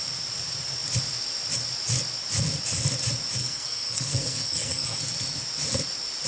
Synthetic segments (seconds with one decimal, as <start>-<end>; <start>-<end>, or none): 3.4-5.0

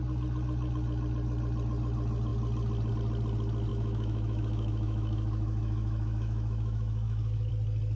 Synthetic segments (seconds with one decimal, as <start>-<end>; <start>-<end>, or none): 3.7-7.5

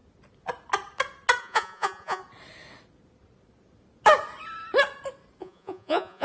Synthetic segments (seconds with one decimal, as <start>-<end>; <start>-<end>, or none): 1.4-2.2; 5.4-6.2

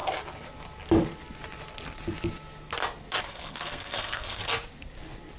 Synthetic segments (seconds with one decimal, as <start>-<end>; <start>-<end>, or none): 3.2-4.4

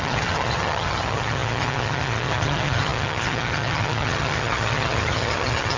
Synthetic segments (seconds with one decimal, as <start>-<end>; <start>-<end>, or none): 0.0-5.8